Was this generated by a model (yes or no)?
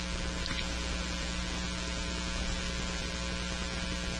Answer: no